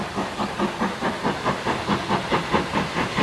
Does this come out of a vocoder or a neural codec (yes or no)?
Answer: no